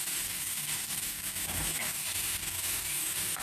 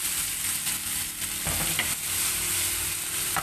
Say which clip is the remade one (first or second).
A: first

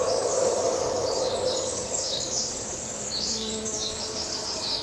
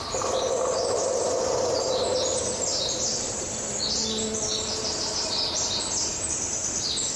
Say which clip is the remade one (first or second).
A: first